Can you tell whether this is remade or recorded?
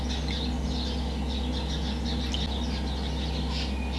recorded